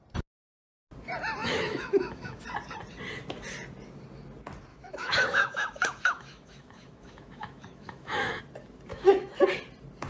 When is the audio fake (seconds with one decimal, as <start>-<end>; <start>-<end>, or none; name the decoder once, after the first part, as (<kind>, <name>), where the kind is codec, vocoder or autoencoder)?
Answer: 1.4-2.4 (autoencoder, DAC-VAE); 4.7-8.4; 8.9-9.4